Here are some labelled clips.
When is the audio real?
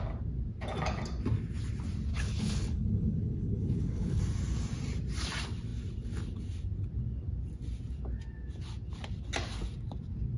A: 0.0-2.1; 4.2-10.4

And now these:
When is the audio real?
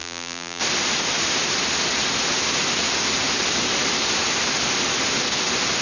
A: 0.6-5.8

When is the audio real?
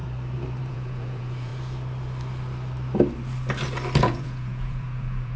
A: 0.0-0.7; 1.5-4.0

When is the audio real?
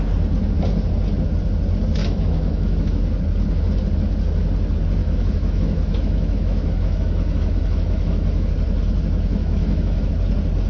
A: 0.0-2.0; 3.0-5.0; 8.5-9.4; 10.1-10.7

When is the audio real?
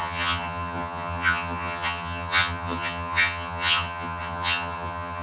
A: none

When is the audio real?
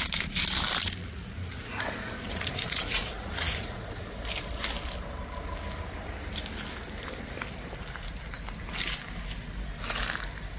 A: 0.0-1.0; 3.8-10.6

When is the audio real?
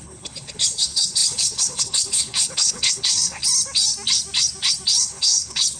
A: 3.4-5.0